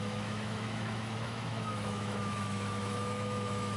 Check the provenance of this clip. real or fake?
fake